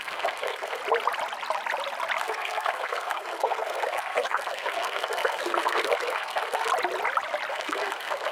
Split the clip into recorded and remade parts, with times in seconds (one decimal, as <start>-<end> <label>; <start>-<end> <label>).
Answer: 0.0-0.8 remade; 0.8-2.2 recorded; 2.2-6.7 remade; 6.7-7.5 recorded; 7.5-8.3 remade